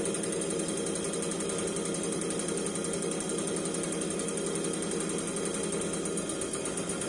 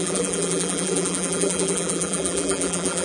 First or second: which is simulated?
second